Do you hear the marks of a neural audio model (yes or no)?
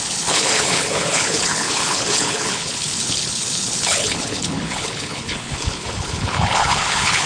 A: yes